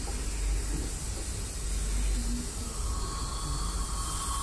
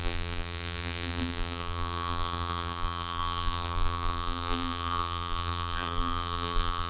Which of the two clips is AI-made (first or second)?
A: second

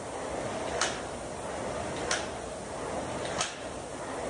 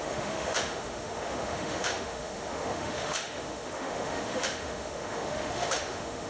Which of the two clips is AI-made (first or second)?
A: second